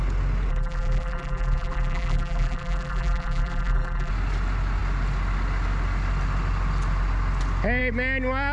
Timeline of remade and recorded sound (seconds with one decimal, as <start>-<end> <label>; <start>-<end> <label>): 0.0-0.5 recorded; 0.5-4.1 remade; 4.1-8.5 recorded

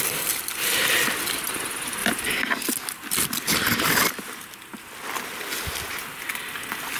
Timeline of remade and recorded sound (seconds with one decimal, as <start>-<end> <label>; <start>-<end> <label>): 0.0-2.0 recorded; 2.0-4.0 remade; 4.0-7.0 recorded

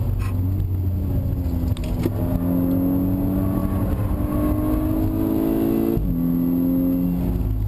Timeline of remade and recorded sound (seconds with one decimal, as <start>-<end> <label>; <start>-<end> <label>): 0.0-7.7 recorded

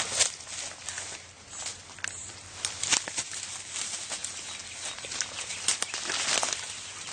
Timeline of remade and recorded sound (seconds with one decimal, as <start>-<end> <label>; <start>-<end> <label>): 0.0-7.1 recorded

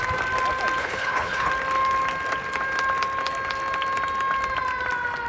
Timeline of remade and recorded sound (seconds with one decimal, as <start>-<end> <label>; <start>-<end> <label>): 0.0-0.8 recorded; 0.8-1.5 remade; 1.5-5.3 recorded

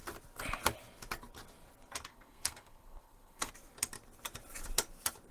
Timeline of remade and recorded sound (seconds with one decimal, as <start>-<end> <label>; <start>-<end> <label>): 0.0-2.1 recorded; 2.1-3.5 remade; 3.5-5.3 recorded